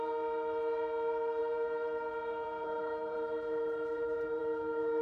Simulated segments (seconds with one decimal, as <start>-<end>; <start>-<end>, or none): 1.4-4.4